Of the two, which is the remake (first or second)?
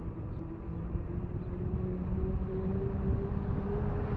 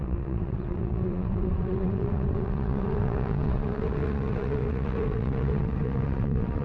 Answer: second